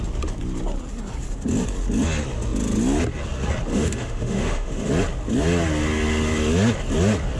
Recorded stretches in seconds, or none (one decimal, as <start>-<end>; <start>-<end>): 0.0-3.7; 4.9-7.4